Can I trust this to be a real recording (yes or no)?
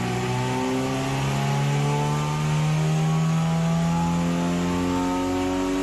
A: yes